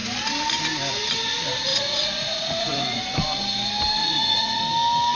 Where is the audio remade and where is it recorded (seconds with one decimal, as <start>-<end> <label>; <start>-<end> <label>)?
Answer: 0.0-1.7 recorded; 1.7-3.0 remade; 3.0-4.0 recorded; 4.0-4.6 remade; 4.6-5.2 recorded